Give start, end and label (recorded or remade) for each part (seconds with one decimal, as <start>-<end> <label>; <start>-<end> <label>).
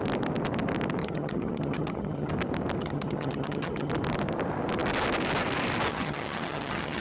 0.0-1.0 recorded; 1.0-2.3 remade; 2.3-2.8 recorded; 2.8-3.9 remade; 3.9-5.9 recorded; 5.9-7.0 remade